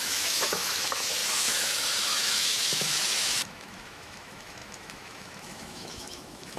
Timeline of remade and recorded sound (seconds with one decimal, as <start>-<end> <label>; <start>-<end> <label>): 0.0-6.6 remade